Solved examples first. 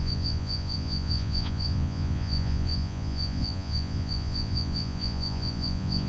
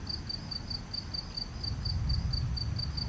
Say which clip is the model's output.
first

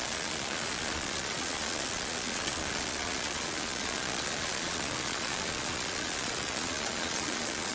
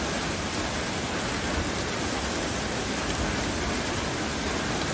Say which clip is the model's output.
first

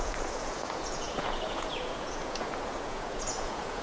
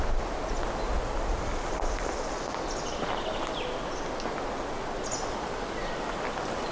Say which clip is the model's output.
first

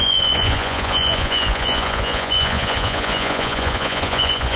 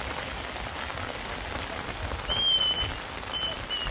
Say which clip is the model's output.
first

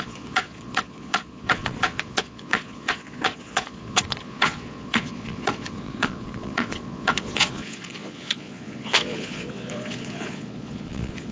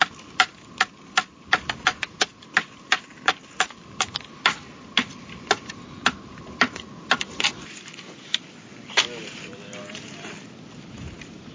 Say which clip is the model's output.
first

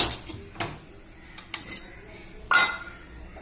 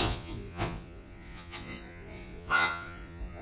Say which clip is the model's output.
second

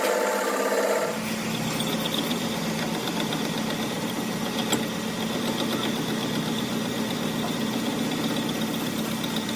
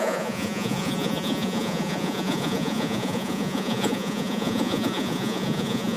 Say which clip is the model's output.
second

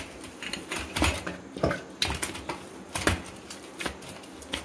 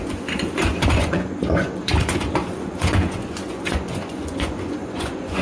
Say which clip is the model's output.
second